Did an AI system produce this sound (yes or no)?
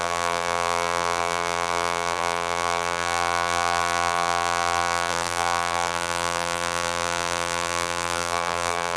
yes